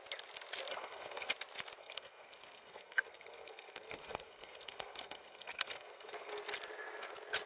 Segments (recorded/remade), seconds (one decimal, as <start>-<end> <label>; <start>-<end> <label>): 0.0-0.7 recorded; 0.7-1.3 remade; 1.3-1.8 recorded; 1.8-6.3 remade; 6.3-7.5 recorded